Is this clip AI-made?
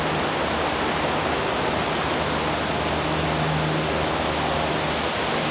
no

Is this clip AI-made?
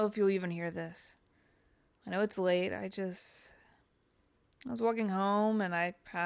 no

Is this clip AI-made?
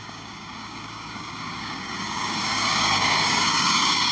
yes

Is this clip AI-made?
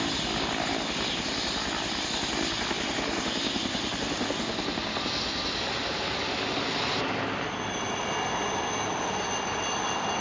no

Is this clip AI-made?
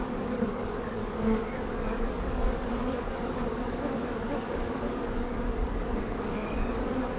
yes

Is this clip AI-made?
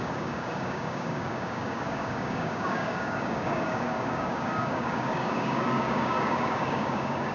yes